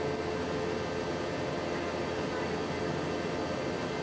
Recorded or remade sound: recorded